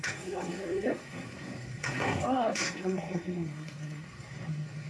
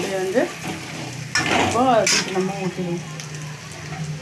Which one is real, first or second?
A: second